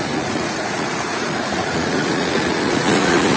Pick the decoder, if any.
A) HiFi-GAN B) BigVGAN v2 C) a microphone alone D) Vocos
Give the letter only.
D